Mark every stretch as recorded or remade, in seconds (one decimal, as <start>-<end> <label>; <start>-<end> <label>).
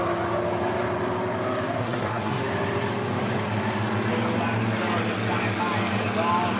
0.0-1.8 recorded; 1.8-2.4 remade; 2.4-6.6 recorded